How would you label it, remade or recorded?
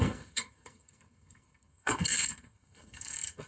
remade